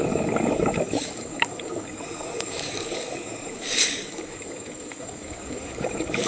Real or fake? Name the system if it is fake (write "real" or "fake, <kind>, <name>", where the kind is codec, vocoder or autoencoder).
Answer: fake, codec, DAC